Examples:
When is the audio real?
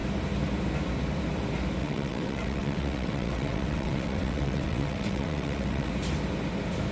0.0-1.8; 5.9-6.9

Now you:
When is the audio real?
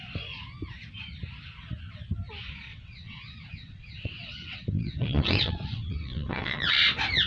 0.0-2.7; 6.8-7.3